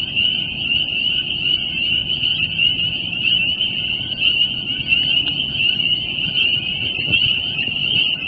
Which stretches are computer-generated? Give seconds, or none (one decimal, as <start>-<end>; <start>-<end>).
0.0-2.3; 5.4-8.3

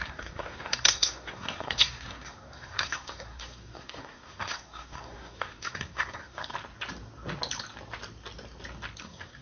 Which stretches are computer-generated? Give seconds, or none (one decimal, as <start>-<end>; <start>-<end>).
0.0-6.5; 9.0-9.4

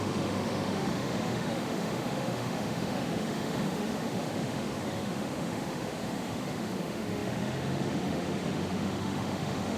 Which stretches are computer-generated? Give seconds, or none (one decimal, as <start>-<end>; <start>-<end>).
0.0-9.8

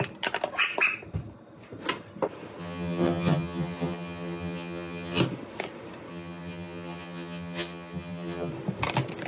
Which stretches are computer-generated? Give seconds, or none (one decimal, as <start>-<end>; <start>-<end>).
2.6-5.2; 6.1-8.5

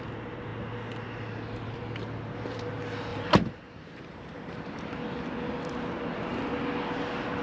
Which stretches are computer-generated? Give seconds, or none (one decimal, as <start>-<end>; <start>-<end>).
3.1-4.6

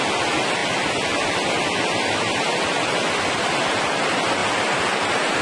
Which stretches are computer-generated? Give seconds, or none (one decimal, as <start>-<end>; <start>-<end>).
2.5-3.6

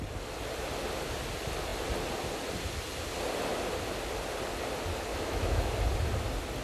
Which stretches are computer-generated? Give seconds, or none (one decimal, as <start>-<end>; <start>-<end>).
5.1-5.7